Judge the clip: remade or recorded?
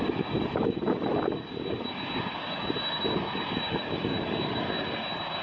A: recorded